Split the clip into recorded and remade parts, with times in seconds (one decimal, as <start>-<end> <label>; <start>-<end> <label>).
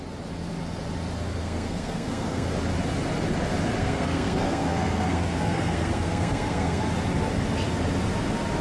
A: 0.0-1.4 recorded; 1.4-2.5 remade; 2.5-3.8 recorded; 3.8-6.8 remade; 6.8-8.6 recorded